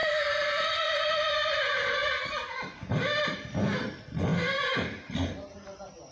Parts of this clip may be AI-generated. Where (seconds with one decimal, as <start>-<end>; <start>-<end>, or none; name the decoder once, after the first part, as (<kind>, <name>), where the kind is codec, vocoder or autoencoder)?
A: 0.0-0.6 (vocoder, BigVGAN v2)